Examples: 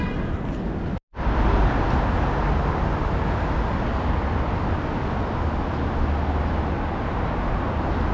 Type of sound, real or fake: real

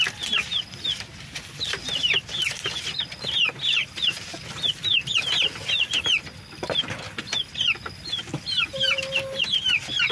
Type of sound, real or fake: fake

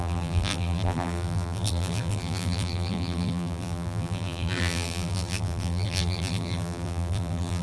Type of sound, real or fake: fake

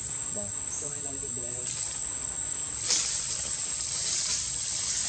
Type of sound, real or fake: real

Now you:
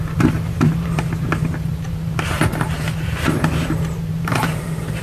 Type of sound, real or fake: fake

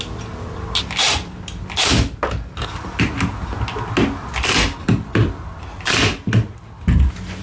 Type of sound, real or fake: real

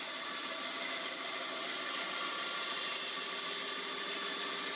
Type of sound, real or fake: real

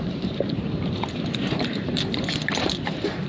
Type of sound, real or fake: fake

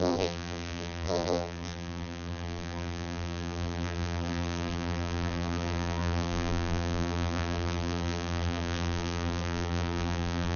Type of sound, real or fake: fake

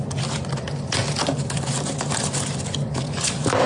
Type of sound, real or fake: fake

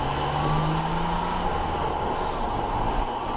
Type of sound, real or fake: real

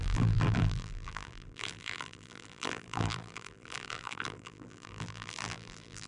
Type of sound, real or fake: fake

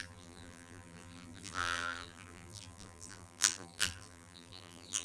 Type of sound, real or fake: fake